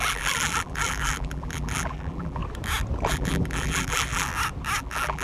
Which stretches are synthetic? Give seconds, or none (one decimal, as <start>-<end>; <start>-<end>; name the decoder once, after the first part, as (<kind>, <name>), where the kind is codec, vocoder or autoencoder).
0.0-2.4 (vocoder, BigVGAN v2); 3.1-4.3; 4.8-5.2